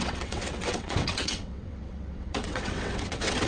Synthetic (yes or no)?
yes